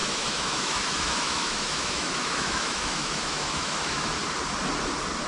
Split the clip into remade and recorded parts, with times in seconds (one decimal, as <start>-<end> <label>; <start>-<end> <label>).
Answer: 0.0-4.2 remade; 4.2-5.3 recorded